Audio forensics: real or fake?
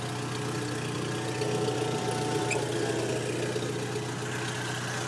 real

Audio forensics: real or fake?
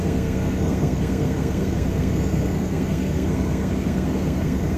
fake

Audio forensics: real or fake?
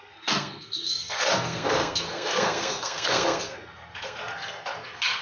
fake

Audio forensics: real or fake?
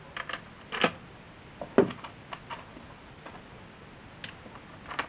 real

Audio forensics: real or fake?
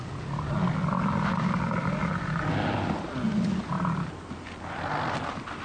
real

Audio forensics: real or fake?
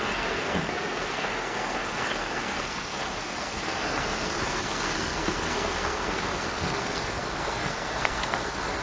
fake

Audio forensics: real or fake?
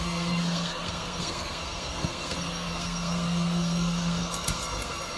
fake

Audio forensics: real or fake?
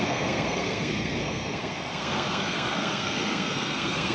fake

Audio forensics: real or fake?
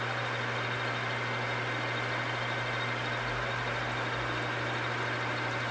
real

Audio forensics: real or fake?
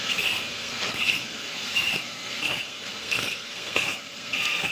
fake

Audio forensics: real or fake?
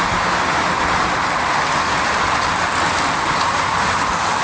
real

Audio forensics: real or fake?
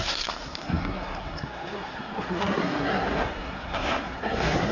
fake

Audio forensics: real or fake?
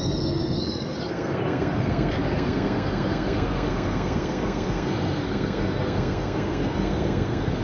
fake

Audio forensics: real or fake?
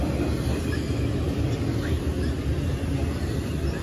real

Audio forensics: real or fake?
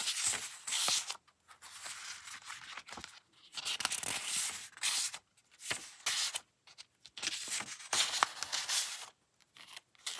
real